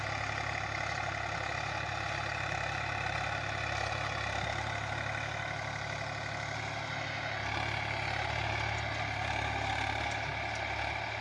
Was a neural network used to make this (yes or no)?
no